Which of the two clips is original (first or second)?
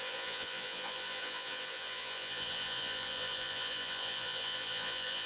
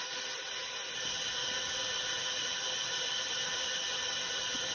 second